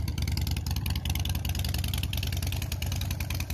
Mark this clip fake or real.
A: real